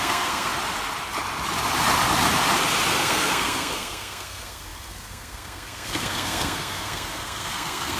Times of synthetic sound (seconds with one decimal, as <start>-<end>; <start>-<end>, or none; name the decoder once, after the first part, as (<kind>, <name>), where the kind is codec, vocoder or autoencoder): 0.0-0.5 (codec, SNAC); 3.0-8.0